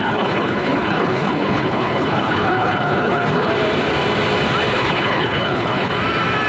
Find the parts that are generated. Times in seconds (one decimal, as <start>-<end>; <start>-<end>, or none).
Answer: 0.0-3.5; 4.7-5.9